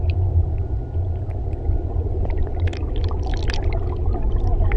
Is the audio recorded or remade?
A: recorded